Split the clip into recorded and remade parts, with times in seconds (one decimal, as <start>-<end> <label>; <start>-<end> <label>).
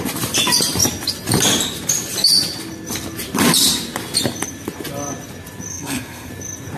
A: 0.0-5.7 recorded; 5.7-6.3 remade; 6.3-6.8 recorded